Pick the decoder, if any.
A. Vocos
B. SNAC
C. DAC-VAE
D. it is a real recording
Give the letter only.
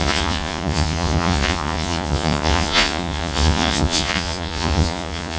A